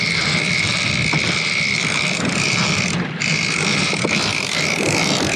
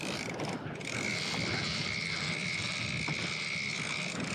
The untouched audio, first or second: second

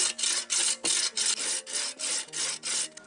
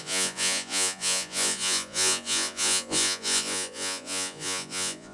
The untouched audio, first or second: first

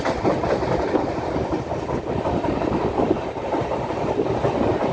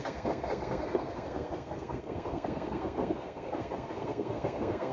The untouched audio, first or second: first